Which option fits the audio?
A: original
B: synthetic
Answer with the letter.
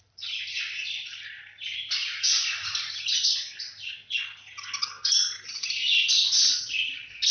A